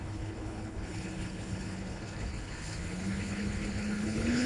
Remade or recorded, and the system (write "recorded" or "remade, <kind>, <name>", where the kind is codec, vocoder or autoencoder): remade, codec, HILCodec